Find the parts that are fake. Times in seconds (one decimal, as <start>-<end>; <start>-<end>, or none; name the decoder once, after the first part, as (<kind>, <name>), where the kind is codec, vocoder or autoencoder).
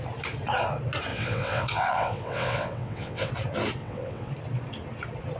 1.1-3.3 (vocoder, WaveNeXt); 3.8-4.3